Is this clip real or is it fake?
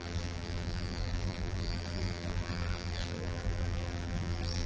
fake